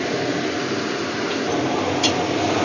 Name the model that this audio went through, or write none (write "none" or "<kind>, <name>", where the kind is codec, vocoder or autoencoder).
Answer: none